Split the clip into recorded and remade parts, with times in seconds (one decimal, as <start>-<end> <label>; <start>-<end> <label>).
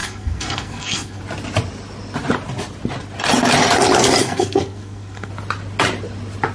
0.0-1.2 remade; 1.2-4.2 recorded; 4.2-5.3 remade; 5.3-6.5 recorded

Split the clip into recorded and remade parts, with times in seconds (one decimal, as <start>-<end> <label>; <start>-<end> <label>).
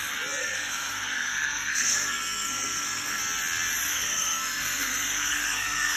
0.0-0.4 recorded; 0.4-3.2 remade; 3.2-3.9 recorded; 3.9-6.0 remade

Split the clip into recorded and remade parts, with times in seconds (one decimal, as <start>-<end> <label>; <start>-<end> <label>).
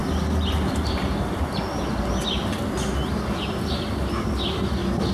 0.0-5.1 recorded